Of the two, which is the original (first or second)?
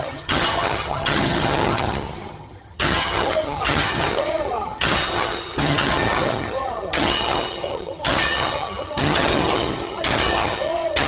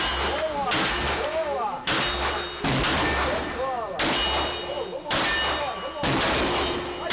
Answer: second